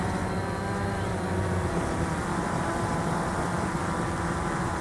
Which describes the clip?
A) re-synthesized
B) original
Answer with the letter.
A